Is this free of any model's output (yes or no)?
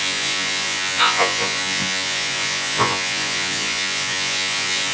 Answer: no